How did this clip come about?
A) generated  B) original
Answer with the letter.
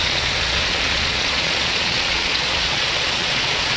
A